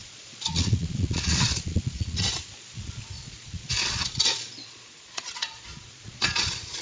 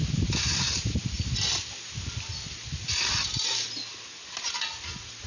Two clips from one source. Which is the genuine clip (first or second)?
second